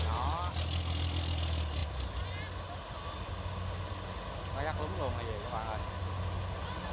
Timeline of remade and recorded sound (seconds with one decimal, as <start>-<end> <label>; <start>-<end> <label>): 0.0-6.9 recorded